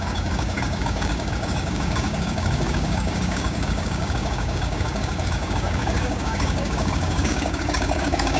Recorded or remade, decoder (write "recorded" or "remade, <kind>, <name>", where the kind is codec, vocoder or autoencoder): remade, codec, DAC